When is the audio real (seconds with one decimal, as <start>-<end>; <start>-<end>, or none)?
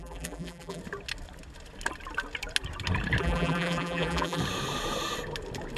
0.8-3.2; 4.4-5.8